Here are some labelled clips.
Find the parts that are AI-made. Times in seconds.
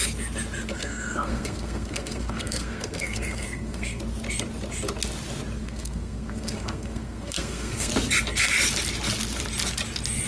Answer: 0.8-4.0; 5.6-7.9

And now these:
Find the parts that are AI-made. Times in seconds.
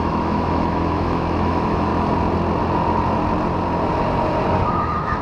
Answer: 0.0-1.9; 4.8-5.2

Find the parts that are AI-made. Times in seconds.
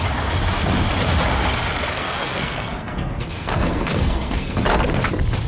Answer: 1.9-4.6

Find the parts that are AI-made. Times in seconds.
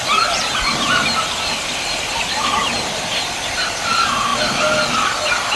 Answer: none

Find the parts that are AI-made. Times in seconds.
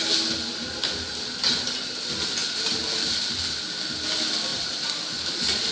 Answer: 4.5-5.3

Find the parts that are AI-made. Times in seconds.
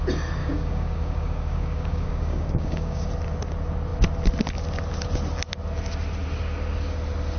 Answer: 0.4-3.1